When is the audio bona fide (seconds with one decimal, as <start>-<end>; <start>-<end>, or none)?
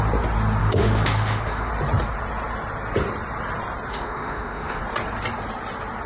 0.0-0.6; 1.7-3.9; 4.8-6.1